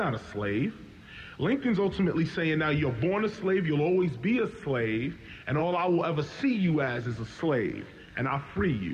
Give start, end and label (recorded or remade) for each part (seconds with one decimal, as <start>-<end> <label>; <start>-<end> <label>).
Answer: 0.0-5.6 recorded; 5.6-8.3 remade; 8.3-8.9 recorded